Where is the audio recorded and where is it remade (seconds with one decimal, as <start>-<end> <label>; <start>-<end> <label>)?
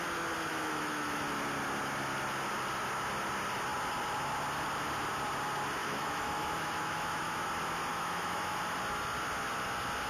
0.0-0.5 recorded; 0.5-1.2 remade; 1.2-5.8 recorded; 5.8-7.5 remade; 7.5-7.9 recorded; 7.9-8.6 remade; 8.6-10.1 recorded